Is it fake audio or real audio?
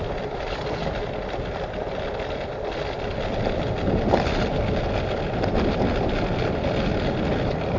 real